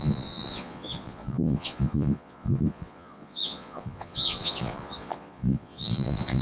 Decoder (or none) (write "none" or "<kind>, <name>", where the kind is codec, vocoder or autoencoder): vocoder, Vocos